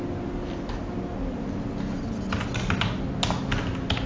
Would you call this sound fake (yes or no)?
no